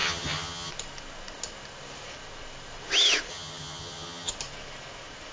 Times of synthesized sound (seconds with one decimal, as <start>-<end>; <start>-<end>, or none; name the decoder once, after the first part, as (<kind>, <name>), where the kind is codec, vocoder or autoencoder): 0.0-0.7 (vocoder, HiFi-GAN); 3.3-4.3